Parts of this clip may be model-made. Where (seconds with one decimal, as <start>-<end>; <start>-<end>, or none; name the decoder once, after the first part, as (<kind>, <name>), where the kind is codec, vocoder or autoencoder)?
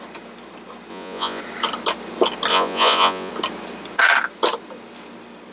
0.9-1.4 (vocoder, Vocos); 2.5-3.3